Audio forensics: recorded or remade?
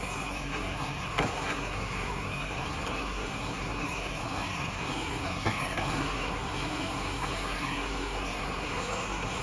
remade